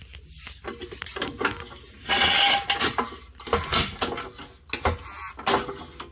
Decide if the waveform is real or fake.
real